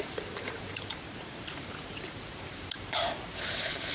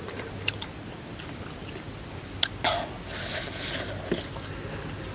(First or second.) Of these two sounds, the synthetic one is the first